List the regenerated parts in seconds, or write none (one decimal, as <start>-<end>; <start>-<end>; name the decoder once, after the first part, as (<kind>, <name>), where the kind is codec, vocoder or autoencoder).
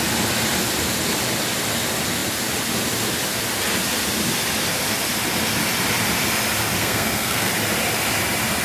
6.8-7.5 (codec, SNAC)